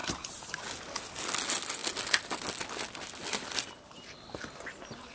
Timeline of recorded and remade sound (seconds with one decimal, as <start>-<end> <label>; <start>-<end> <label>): 0.0-0.6 remade; 0.6-5.1 recorded